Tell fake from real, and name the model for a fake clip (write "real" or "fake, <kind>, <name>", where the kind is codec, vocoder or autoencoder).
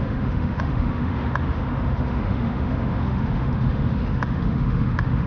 fake, autoencoder, DAC-VAE